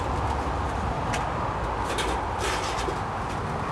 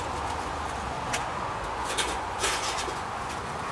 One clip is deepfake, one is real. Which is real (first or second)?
first